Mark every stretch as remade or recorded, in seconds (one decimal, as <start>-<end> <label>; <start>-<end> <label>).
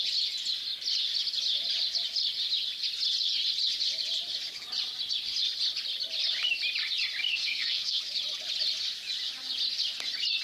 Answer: 0.0-7.3 recorded; 7.3-8.0 remade; 8.0-10.4 recorded